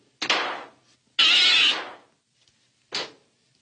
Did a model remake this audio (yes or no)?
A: no